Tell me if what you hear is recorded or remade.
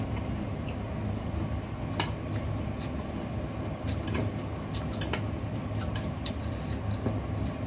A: recorded